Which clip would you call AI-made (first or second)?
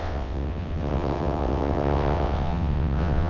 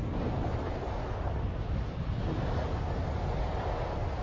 first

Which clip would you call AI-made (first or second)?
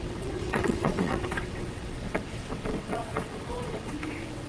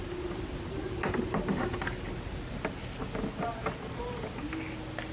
first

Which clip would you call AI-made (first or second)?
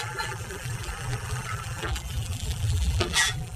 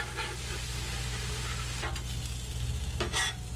first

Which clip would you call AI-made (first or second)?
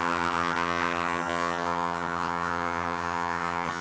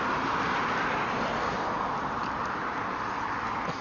first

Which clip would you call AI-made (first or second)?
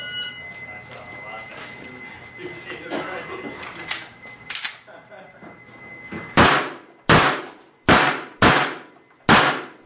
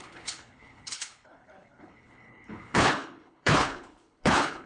second